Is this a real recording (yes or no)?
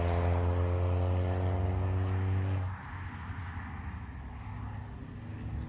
yes